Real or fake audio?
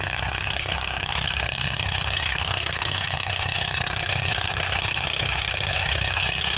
fake